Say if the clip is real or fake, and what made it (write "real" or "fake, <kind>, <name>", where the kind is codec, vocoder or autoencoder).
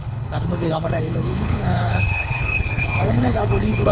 fake, codec, HILCodec